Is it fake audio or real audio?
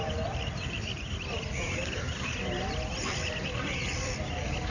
fake